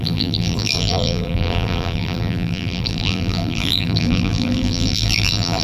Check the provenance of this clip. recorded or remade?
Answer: remade